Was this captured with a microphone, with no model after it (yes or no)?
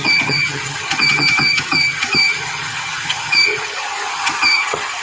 no